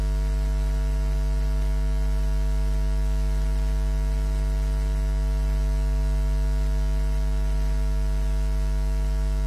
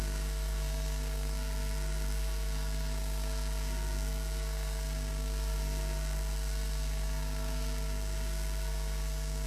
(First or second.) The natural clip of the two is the first